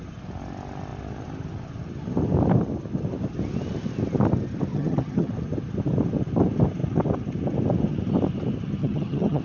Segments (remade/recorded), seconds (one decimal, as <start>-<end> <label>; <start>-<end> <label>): 0.0-4.7 recorded; 4.7-5.3 remade; 5.3-8.8 recorded; 8.8-9.4 remade